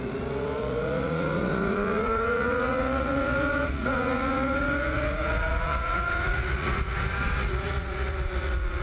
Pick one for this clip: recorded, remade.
remade